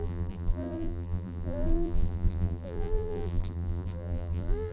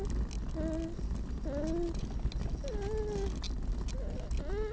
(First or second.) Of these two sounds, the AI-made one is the first